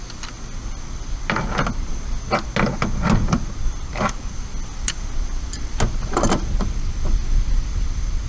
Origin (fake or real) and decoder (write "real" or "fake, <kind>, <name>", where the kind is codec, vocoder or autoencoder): real